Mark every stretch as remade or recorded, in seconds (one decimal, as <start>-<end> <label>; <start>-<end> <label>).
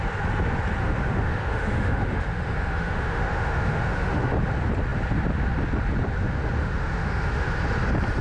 0.0-0.8 recorded; 0.8-4.3 remade; 4.3-6.6 recorded; 6.6-7.6 remade; 7.6-8.2 recorded